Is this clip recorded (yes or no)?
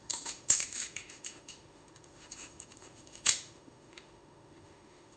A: no